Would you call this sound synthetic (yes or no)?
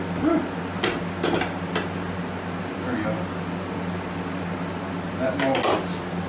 no